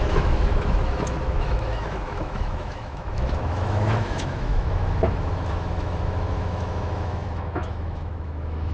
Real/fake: fake